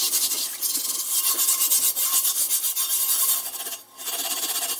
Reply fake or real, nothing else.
real